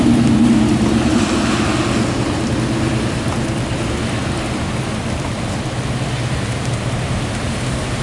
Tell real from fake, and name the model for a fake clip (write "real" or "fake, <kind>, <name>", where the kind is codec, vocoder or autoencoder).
real